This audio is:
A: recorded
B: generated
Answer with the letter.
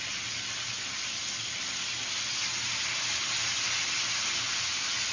A